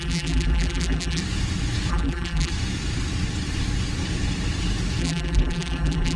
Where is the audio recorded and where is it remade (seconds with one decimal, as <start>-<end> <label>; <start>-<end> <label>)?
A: 0.0-1.2 remade; 1.2-1.9 recorded; 1.9-2.5 remade; 2.5-5.0 recorded; 5.0-6.2 remade